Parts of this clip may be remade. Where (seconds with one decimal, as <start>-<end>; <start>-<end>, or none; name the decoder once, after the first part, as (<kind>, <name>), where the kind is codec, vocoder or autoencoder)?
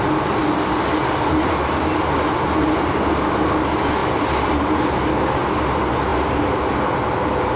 none